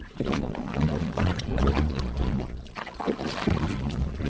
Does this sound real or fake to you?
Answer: fake